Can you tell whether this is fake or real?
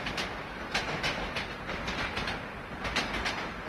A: real